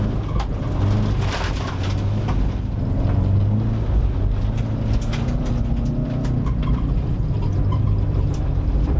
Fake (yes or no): no